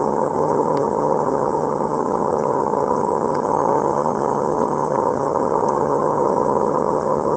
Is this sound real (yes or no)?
no